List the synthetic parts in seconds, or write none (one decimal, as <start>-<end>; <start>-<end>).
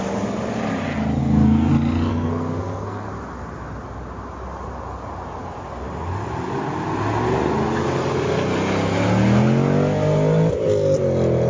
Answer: 1.2-1.7; 2.1-3.1